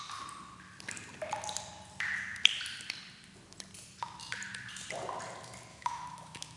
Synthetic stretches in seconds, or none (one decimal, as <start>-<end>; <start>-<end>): 5.7-6.6